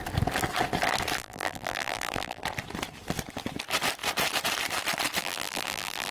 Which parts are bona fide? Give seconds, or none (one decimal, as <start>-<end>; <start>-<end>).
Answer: 0.0-1.2; 2.4-5.2

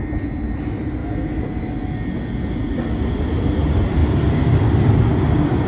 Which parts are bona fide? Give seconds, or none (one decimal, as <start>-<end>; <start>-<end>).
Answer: 0.0-5.7

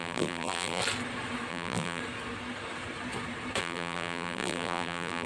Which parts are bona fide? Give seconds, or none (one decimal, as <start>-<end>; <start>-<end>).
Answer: 0.8-1.5; 2.0-3.6